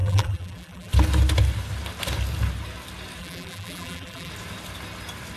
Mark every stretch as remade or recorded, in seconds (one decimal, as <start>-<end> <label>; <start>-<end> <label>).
0.0-0.9 remade; 0.9-3.2 recorded; 3.2-4.3 remade; 4.3-5.4 recorded